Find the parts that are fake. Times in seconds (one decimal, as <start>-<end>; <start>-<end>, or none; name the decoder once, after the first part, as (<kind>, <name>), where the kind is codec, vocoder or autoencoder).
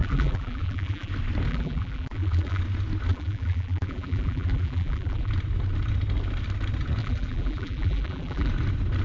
0.0-1.1 (vocoder, BigVGAN v2); 1.5-2.6; 3.1-5.3; 7.0-8.5